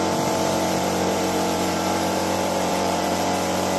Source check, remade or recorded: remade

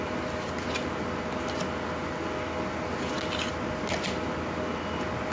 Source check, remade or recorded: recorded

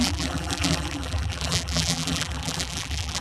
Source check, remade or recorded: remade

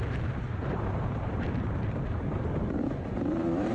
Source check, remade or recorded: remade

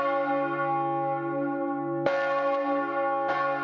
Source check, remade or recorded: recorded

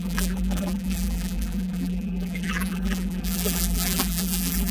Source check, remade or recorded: remade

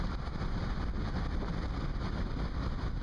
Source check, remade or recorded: remade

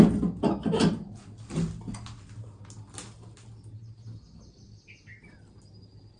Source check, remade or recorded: recorded